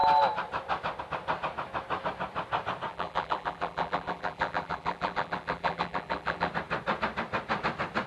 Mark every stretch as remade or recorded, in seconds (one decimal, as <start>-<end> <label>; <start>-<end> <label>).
0.0-2.9 recorded; 2.9-6.5 remade; 6.5-8.1 recorded